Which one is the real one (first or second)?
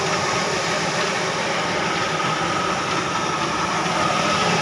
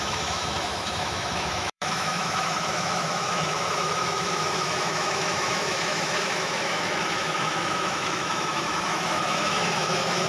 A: first